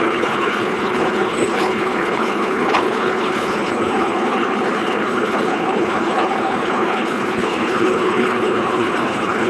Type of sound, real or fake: fake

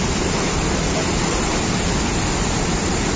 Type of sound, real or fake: real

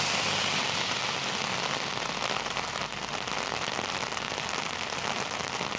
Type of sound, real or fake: real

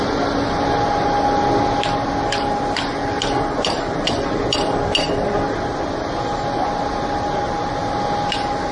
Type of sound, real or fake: real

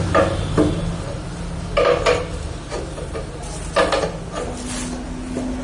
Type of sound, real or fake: real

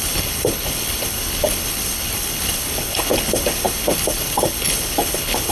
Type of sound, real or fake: fake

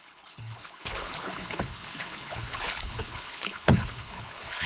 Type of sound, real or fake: fake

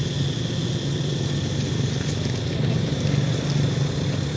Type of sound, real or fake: real